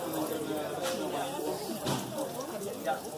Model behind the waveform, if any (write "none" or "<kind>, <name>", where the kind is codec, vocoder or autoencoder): none